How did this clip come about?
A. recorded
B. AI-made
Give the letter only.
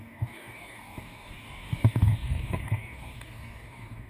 B